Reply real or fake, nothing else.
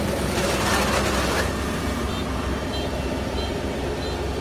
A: real